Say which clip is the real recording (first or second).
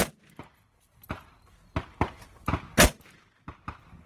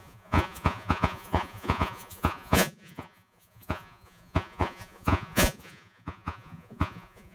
first